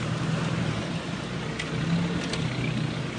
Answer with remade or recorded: recorded